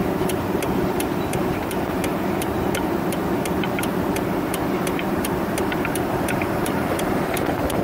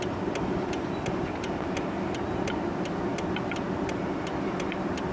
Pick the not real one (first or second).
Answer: first